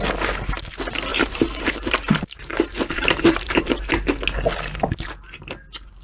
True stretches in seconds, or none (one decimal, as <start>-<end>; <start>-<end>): 0.0-1.1; 3.9-6.0